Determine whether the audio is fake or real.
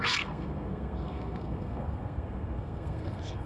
fake